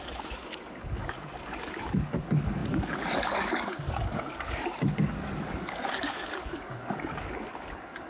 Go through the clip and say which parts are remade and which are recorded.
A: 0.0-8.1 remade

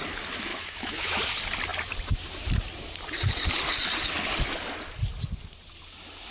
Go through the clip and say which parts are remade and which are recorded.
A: 0.0-0.5 recorded; 0.5-1.2 remade; 1.2-6.3 recorded

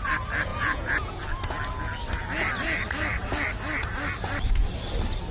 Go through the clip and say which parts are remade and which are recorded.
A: 0.0-0.5 recorded; 0.5-1.1 remade; 1.1-5.3 recorded